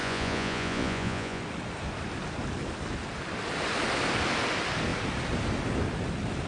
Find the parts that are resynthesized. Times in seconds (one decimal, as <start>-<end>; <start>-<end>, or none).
0.0-1.4